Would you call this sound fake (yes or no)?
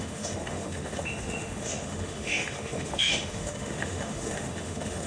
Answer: yes